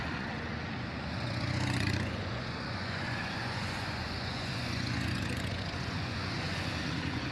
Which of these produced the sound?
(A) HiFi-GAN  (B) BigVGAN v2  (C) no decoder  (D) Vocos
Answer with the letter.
D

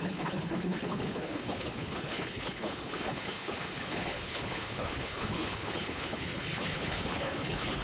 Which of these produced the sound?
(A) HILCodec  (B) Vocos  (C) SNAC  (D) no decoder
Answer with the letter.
A